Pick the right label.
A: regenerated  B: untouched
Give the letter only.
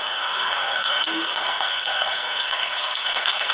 A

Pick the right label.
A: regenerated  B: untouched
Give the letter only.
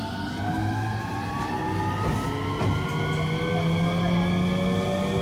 B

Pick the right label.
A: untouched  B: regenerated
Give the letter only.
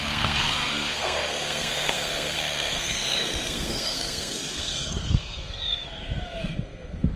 B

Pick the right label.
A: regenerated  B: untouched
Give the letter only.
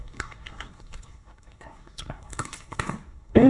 A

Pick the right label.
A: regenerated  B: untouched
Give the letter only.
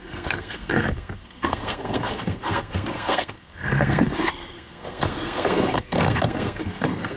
A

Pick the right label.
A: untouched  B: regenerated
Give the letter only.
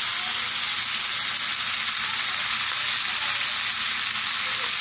A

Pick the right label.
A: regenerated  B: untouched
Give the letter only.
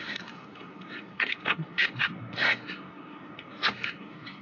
A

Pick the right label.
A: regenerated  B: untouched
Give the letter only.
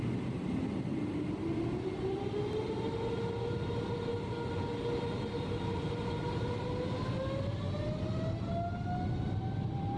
B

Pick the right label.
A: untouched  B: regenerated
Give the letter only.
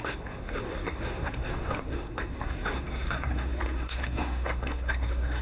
B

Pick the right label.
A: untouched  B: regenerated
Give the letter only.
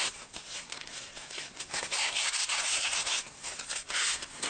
B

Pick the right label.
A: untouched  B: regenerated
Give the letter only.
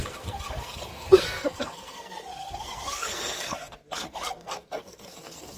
B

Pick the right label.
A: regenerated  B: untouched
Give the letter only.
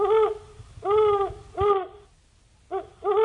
B